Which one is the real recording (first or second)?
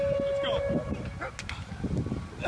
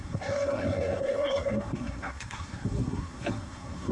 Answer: first